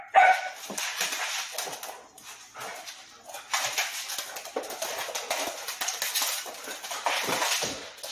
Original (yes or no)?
yes